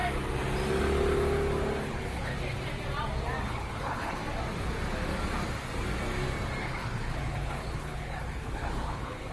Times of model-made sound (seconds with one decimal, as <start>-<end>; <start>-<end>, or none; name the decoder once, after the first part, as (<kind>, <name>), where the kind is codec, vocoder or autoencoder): 1.8-2.3 (codec, HILCodec); 3.4-4.2; 6.6-9.3

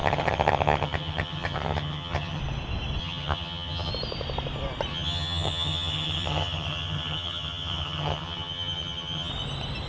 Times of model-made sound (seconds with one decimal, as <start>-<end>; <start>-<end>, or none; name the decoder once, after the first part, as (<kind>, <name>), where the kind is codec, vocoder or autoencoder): 0.0-2.4 (vocoder, HiFi-GAN); 3.0-3.9; 4.9-9.3

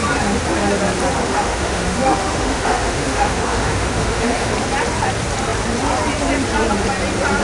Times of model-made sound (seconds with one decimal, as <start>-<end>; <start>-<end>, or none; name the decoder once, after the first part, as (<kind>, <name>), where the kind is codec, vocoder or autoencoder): 1.2-4.5 (autoencoder, DAC-VAE)

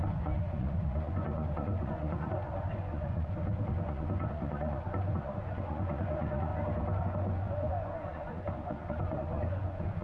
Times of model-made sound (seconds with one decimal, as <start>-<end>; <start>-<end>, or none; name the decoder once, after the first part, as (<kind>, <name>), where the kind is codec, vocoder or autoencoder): 0.0-6.5 (vocoder, Vocos); 7.0-10.0

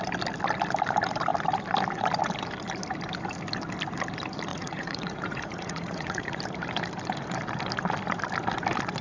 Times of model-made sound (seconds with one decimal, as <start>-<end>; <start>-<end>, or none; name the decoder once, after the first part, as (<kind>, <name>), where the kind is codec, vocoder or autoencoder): 4.5-6.4 (vocoder, Vocos)

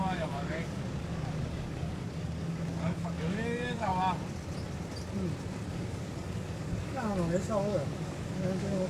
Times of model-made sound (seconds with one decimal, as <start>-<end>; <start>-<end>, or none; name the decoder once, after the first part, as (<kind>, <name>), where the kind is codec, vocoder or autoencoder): 0.0-3.9 (codec, DAC); 5.7-8.9

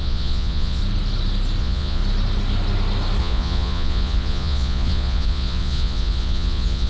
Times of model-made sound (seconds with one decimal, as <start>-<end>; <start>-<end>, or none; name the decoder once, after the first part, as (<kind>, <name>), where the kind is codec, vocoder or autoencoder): 0.0-0.8 (vocoder, Vocos); 1.6-2.0; 3.2-6.9

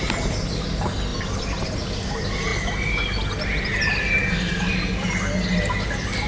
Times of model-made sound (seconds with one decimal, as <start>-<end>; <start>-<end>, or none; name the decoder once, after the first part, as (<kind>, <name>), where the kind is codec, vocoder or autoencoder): none